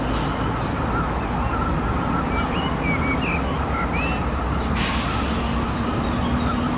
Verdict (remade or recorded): recorded